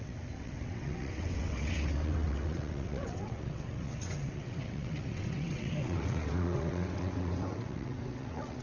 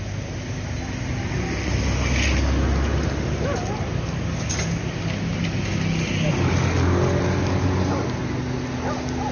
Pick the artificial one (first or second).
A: first